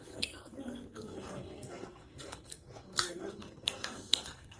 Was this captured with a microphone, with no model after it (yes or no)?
no